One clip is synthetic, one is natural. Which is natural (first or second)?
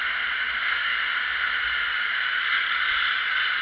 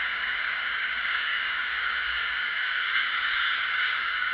first